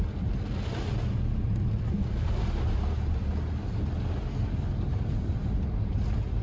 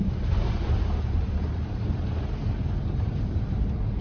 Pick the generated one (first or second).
second